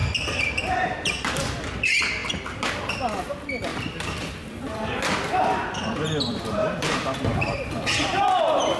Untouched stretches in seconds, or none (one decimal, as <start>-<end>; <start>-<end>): 0.7-3.7; 8.2-8.8